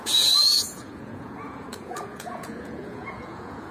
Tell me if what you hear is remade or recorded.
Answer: remade